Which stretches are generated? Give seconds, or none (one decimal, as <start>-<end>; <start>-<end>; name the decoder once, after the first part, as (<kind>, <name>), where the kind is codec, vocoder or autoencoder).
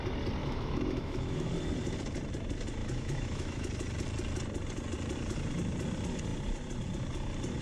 0.4-1.5 (autoencoder, DAC-VAE); 2.8-3.7